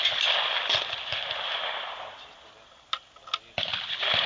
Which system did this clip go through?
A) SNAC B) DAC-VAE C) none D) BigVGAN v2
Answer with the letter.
C